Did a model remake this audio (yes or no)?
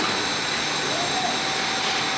no